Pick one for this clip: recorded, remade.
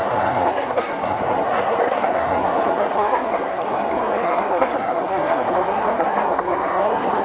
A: remade